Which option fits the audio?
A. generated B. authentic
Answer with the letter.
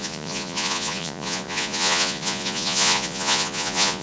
A